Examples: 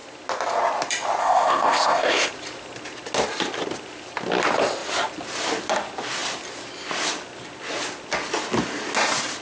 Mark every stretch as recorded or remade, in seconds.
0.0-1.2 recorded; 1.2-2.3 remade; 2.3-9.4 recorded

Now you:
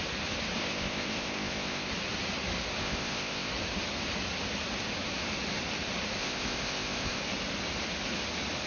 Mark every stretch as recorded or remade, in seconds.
0.0-0.6 recorded; 0.6-1.9 remade; 1.9-2.8 recorded; 2.8-3.5 remade; 3.5-6.2 recorded; 6.2-7.2 remade; 7.2-8.7 recorded

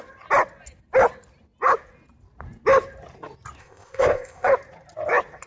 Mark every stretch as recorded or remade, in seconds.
0.0-3.6 recorded; 3.6-4.5 remade; 4.5-5.5 recorded

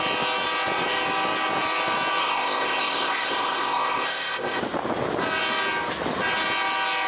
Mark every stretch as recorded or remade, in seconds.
0.0-2.2 recorded; 2.2-4.6 remade; 4.6-7.1 recorded

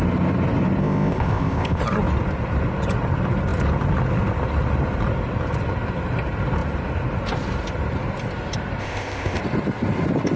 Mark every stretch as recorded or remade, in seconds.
0.0-0.8 recorded; 0.8-1.8 remade; 1.8-8.8 recorded; 8.8-9.4 remade; 9.4-10.4 recorded